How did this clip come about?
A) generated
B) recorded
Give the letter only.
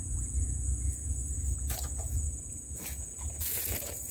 A